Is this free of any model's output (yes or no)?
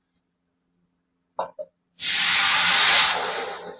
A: yes